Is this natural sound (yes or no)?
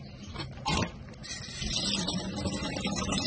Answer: yes